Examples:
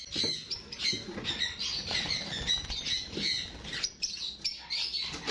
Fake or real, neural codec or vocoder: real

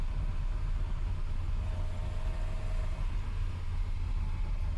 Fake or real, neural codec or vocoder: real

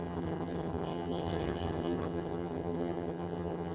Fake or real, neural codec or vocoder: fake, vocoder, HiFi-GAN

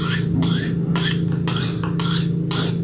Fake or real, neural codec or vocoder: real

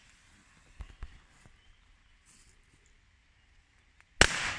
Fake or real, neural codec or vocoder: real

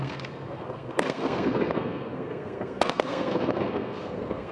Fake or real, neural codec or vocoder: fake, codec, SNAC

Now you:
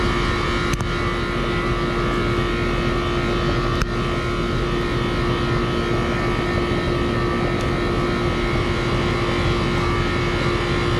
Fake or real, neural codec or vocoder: real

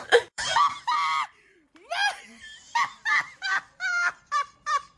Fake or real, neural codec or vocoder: fake, vocoder, BigVGAN v2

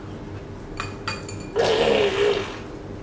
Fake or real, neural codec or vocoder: real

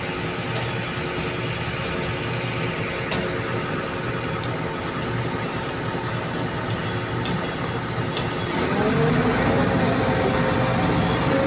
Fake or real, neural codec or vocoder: real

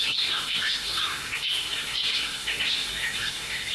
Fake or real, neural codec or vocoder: fake, codec, SNAC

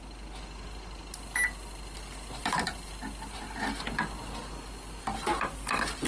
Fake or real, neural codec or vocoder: real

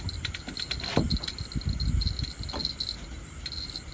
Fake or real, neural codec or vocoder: real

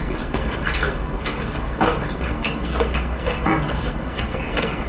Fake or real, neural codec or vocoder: fake, codec, SNAC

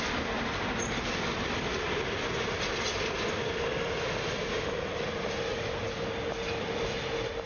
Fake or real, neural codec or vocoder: real